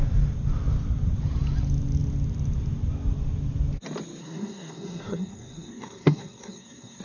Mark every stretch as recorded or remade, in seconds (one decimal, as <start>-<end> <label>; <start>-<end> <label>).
0.0-4.2 recorded; 4.2-7.0 remade